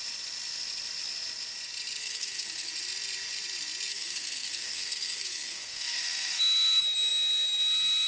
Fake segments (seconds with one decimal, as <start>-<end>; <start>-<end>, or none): 2.0-2.7; 3.9-6.4